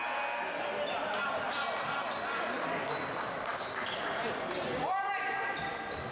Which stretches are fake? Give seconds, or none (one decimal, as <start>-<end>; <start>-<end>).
none